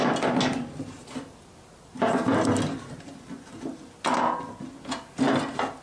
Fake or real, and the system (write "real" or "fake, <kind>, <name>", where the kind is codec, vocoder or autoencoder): real